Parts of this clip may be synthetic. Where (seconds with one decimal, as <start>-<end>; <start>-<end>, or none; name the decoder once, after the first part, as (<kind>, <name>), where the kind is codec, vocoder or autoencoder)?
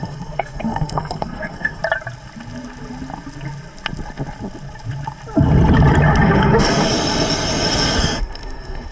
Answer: 0.0-1.8 (codec, SNAC); 6.2-6.8; 8.0-8.9